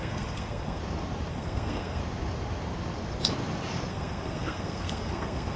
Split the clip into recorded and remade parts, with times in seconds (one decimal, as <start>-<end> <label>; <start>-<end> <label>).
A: 0.0-0.8 remade; 0.8-1.3 recorded; 1.3-2.0 remade; 2.0-3.9 recorded; 3.9-5.6 remade